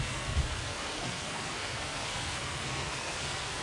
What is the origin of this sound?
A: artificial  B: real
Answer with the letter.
A